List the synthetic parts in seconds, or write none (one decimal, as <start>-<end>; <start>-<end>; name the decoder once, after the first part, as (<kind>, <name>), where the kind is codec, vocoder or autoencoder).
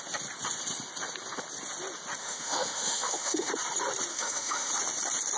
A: 2.2-3.5 (autoencoder, DAC-VAE); 4.1-4.7